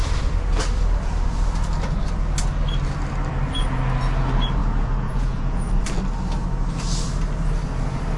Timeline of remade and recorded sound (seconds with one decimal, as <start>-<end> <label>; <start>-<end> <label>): 0.0-4.6 recorded; 4.6-5.7 remade; 5.7-8.2 recorded